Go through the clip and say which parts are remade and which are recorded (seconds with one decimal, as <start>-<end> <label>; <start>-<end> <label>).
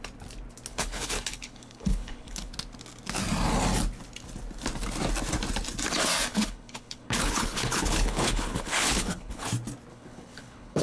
0.0-0.7 recorded; 0.7-2.5 remade; 2.5-6.3 recorded; 6.3-9.5 remade; 9.5-9.9 recorded; 9.9-10.8 remade